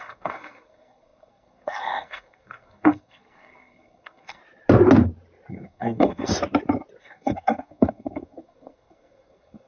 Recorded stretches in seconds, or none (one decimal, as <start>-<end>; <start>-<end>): 4.4-5.5; 6.3-7.0